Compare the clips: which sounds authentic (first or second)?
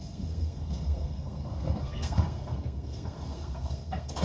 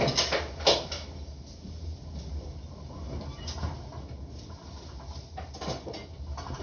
second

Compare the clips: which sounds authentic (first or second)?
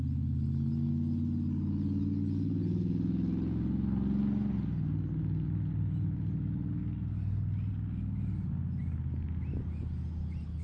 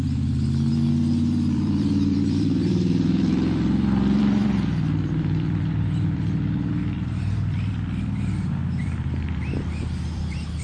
first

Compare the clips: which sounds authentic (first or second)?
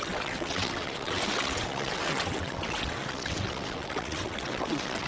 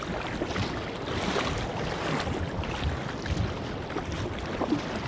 second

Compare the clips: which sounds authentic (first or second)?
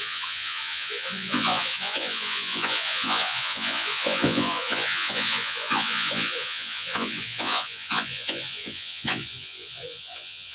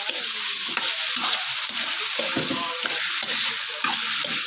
second